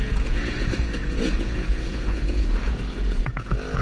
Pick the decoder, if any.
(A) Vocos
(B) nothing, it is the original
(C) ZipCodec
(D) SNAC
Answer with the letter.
A